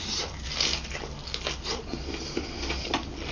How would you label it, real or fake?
real